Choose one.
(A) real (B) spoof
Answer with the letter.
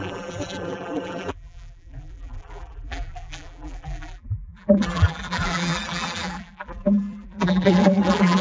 B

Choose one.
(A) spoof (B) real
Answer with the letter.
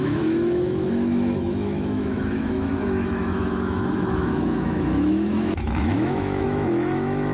A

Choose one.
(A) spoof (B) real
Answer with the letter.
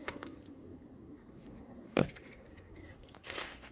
A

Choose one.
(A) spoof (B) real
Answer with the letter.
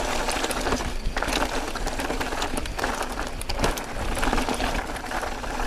B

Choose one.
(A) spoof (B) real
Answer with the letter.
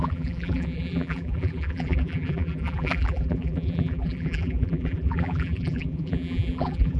A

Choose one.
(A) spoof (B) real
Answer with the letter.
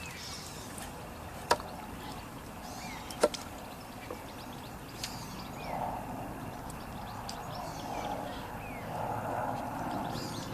B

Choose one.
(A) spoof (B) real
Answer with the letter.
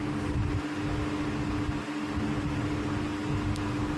B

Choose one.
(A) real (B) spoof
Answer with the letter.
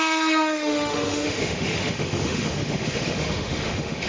B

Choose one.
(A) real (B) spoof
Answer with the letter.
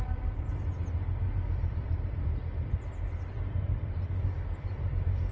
B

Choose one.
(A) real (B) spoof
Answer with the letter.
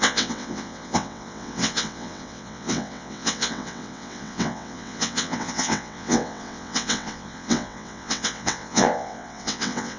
B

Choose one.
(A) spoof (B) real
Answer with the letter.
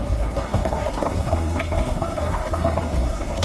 A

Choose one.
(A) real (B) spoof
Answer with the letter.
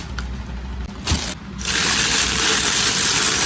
A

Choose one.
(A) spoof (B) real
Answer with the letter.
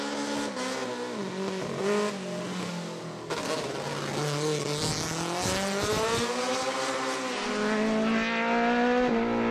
B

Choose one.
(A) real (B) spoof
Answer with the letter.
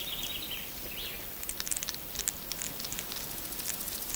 A